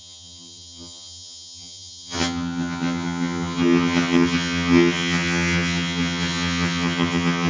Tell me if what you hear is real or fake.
fake